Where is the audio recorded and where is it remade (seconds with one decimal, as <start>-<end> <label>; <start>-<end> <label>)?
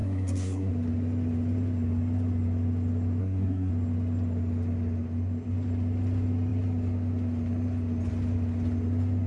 0.0-0.7 remade; 0.7-3.2 recorded; 3.2-3.7 remade; 3.7-9.3 recorded